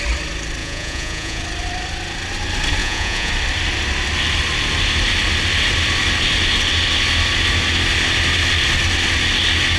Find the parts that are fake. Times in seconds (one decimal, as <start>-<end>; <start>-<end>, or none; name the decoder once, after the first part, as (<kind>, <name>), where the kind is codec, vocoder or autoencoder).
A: 0.6-1.4 (vocoder, Vocos); 2.8-3.3